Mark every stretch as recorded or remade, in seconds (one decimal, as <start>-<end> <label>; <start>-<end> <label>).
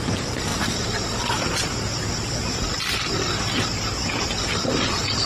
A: 0.0-5.3 recorded